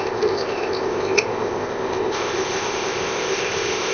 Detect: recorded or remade remade